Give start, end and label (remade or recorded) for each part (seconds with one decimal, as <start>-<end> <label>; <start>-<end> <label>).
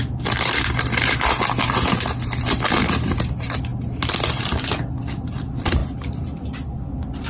0.0-7.3 recorded